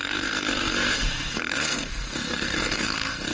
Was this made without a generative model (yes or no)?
no